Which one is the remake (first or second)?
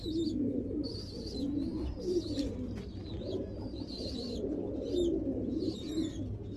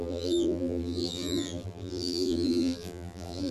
second